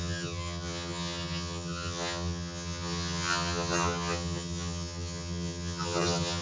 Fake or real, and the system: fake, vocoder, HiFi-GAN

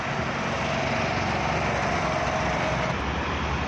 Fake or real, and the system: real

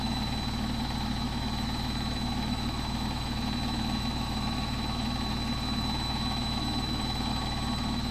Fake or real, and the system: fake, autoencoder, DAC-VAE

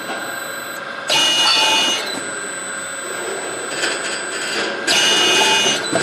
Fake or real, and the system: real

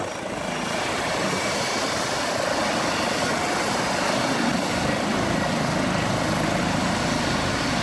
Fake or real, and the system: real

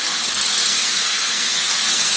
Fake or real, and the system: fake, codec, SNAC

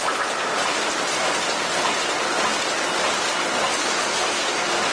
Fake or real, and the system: real